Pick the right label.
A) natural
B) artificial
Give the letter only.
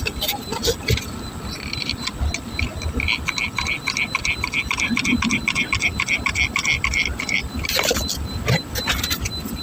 A